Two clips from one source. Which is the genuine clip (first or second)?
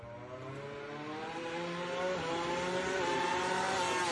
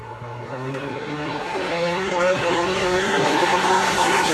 first